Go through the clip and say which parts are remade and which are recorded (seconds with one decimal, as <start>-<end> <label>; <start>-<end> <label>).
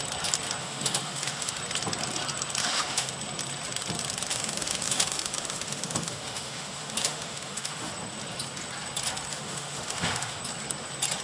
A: 0.0-0.6 recorded; 0.6-1.6 remade; 1.6-2.6 recorded; 2.6-3.1 remade; 3.1-4.3 recorded; 4.3-7.9 remade; 7.9-9.3 recorded; 9.3-10.4 remade; 10.4-11.2 recorded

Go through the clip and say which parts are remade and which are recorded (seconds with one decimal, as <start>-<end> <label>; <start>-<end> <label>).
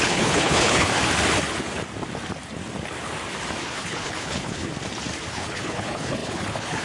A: 0.0-0.9 remade; 0.9-3.6 recorded; 3.6-4.7 remade; 4.7-5.3 recorded; 5.3-6.8 remade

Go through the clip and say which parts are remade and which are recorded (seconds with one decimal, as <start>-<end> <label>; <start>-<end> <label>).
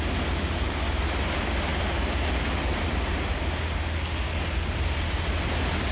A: 0.0-5.9 recorded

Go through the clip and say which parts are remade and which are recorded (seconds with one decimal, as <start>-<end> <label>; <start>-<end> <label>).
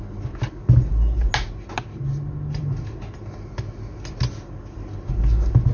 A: 0.0-5.7 recorded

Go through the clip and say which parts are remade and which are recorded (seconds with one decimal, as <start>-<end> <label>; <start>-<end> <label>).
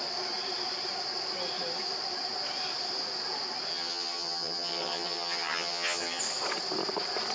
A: 0.0-3.7 recorded; 3.7-6.2 remade; 6.2-7.3 recorded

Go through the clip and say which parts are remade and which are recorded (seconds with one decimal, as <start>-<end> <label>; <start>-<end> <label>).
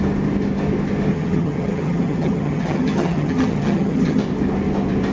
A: 0.0-1.1 recorded; 1.1-4.2 remade; 4.2-5.1 recorded